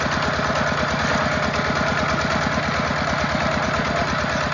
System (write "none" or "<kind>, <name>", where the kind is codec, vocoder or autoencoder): none